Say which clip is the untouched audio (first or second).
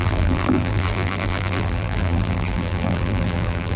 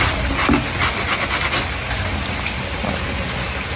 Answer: second